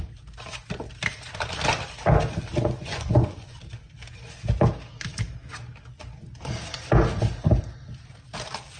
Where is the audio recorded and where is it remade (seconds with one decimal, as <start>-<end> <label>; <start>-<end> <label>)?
0.0-2.5 recorded; 2.5-3.6 remade; 3.6-8.8 recorded